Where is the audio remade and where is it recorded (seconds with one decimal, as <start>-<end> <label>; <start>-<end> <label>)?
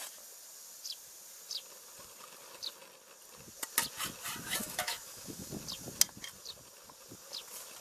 0.0-4.6 recorded; 4.6-5.5 remade; 5.5-7.8 recorded